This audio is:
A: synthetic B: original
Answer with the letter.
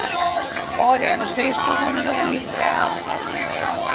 A